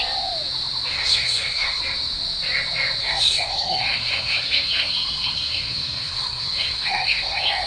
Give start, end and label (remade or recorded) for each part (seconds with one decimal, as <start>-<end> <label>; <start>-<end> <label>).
0.0-0.9 recorded; 0.9-1.8 remade; 1.8-3.0 recorded; 3.0-7.7 remade

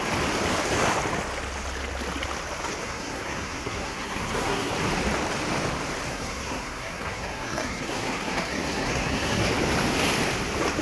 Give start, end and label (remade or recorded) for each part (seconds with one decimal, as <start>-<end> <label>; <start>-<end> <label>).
0.0-2.8 recorded; 2.8-4.7 remade; 4.7-6.1 recorded; 6.1-9.5 remade; 9.5-10.8 recorded

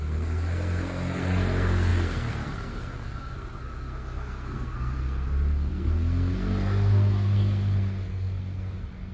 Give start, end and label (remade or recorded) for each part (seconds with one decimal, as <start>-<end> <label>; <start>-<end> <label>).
0.0-9.1 remade

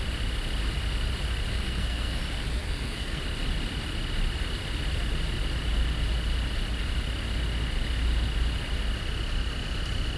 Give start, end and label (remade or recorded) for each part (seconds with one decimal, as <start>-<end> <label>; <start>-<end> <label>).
0.0-1.5 recorded; 1.5-2.2 remade; 2.2-2.6 recorded; 2.6-3.2 remade; 3.2-10.2 recorded